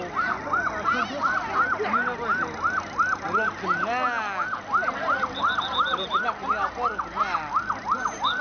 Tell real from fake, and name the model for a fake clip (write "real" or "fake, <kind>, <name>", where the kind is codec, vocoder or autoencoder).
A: real